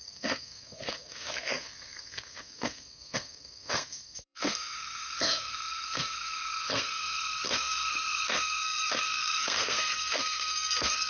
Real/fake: fake